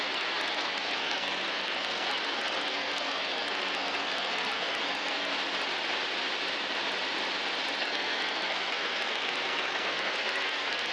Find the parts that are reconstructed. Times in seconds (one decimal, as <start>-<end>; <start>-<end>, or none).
0.0-5.3; 7.8-10.9